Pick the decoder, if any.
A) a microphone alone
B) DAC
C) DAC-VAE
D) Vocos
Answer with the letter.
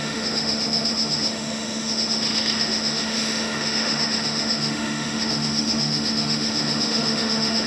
C